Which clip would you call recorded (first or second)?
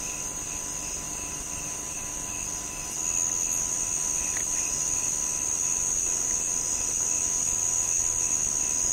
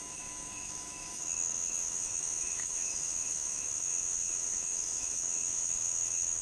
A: first